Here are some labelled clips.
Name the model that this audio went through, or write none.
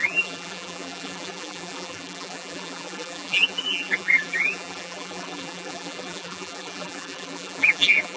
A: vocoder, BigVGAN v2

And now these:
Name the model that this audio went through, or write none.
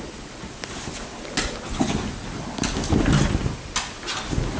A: none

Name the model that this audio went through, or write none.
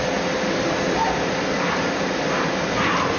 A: none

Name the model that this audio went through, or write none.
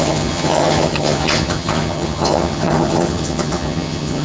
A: vocoder, HiFi-GAN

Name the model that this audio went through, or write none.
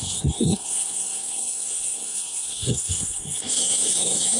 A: codec, SNAC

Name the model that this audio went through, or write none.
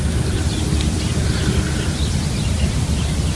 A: none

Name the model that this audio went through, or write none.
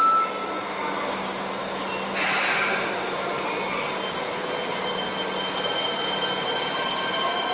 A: none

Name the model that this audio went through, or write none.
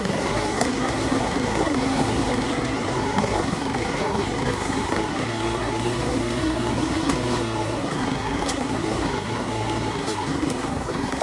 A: codec, SNAC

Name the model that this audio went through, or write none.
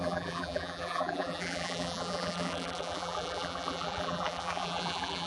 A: vocoder, BigVGAN v2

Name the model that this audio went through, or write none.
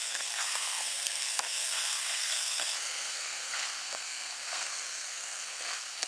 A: codec, SNAC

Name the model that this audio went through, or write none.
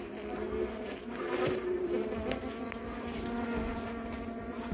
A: none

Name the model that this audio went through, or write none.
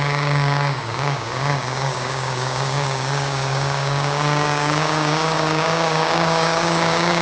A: codec, DAC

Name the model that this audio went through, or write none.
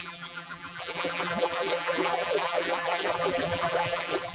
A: vocoder, BigVGAN v2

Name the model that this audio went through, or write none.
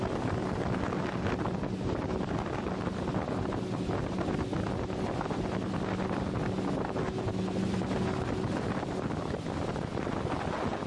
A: none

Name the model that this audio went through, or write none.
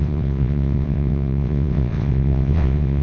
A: vocoder, WaveNeXt